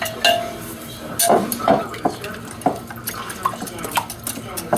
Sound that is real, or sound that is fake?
real